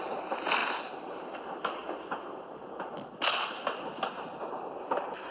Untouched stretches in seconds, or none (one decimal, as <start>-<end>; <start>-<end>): 1.8-4.4